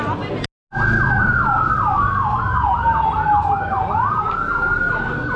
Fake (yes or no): no